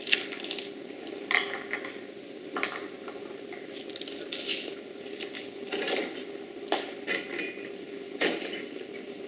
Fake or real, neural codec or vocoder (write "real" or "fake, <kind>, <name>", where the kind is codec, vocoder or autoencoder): real